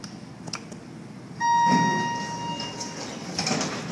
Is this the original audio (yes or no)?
yes